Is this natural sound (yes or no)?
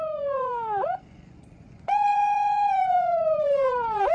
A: no